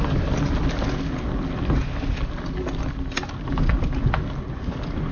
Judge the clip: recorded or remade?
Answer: recorded